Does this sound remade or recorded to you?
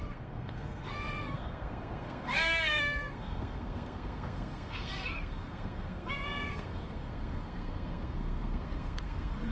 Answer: remade